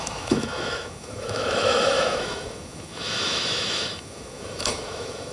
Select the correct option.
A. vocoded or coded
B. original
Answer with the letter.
A